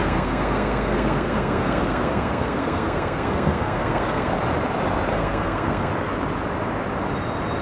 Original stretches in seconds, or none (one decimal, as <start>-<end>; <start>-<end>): 4.3-5.1; 5.9-7.6